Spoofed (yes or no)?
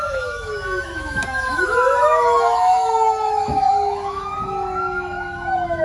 yes